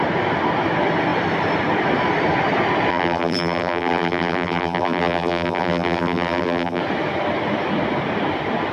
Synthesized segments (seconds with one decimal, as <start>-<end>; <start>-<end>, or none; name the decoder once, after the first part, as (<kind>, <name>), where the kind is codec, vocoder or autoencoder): 2.9-6.8 (vocoder, BigVGAN v2)